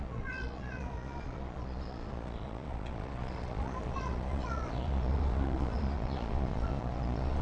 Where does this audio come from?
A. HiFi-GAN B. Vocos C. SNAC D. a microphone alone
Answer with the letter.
B